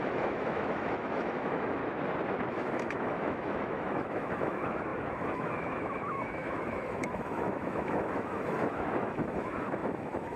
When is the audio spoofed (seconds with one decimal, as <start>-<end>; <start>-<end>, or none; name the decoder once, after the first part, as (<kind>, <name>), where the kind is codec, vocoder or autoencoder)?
0.0-1.8 (autoencoder, DAC-VAE); 2.5-10.4